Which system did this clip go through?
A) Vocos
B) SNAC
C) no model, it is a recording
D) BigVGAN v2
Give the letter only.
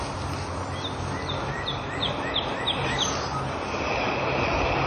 C